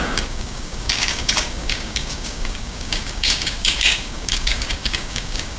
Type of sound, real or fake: fake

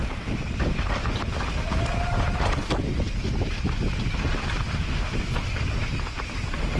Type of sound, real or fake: real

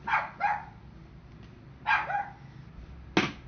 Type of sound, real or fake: real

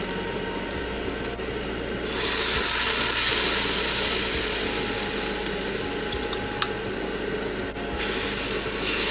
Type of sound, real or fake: real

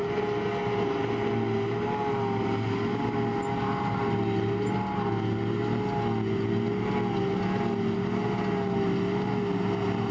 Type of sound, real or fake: real